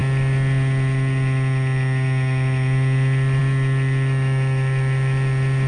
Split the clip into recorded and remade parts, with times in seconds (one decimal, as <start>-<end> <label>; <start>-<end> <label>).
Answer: 0.0-5.7 recorded